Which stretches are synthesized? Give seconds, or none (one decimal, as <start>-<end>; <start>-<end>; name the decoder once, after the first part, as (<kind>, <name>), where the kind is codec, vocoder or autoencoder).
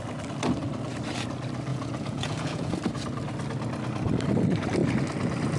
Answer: 1.7-2.7 (vocoder, Vocos)